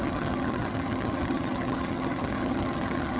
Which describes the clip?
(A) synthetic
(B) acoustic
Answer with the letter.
A